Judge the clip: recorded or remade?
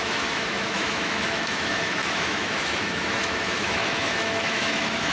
remade